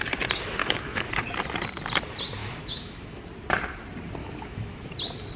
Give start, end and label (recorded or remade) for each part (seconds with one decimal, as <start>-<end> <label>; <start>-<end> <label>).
0.0-0.6 recorded; 0.6-1.1 remade; 1.1-2.4 recorded; 2.4-3.2 remade; 3.2-4.2 recorded; 4.2-4.9 remade; 4.9-5.4 recorded